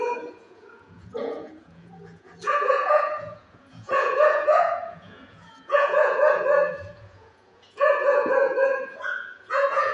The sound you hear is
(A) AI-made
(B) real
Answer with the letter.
A